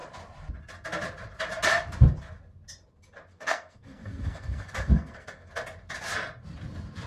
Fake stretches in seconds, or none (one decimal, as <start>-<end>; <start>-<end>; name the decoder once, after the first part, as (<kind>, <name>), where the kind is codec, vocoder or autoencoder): 3.3-5.5 (codec, SNAC)